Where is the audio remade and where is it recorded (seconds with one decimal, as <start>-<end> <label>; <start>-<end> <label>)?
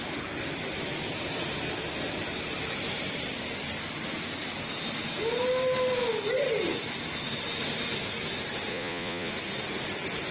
0.0-8.7 recorded; 8.7-9.3 remade; 9.3-10.3 recorded